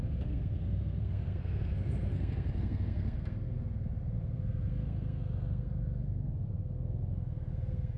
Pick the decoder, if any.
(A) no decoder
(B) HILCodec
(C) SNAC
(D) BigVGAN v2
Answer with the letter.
C